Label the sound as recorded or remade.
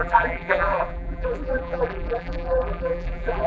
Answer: remade